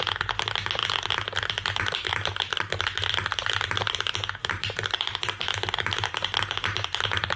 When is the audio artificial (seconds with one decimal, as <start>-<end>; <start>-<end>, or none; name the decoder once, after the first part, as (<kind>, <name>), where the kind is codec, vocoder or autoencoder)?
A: 4.4-5.5 (vocoder, BigVGAN v2)